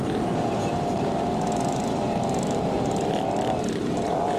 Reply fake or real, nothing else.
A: fake